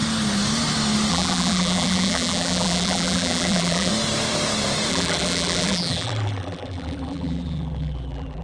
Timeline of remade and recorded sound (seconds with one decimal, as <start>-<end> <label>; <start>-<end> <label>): 0.0-1.1 recorded; 1.1-3.9 remade; 3.9-4.9 recorded; 4.9-8.4 remade